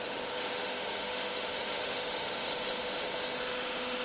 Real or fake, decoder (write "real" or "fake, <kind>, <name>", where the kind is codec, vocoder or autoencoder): fake, autoencoder, DAC-VAE